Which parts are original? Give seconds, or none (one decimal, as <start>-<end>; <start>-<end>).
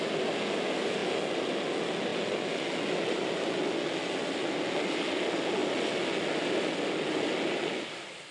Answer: 0.0-8.3